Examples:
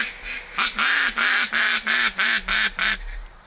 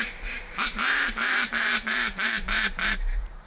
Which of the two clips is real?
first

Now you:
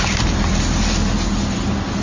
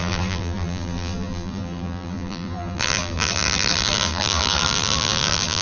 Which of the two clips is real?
first